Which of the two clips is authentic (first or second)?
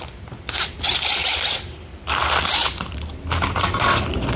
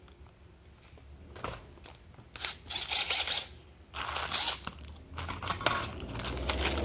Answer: second